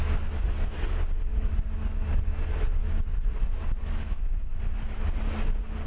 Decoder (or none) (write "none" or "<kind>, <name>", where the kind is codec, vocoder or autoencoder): none